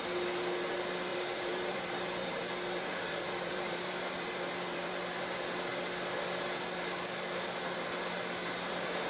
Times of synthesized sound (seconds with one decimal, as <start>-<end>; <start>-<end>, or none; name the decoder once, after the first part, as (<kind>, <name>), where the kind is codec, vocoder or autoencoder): 1.1-4.9 (vocoder, BigVGAN v2)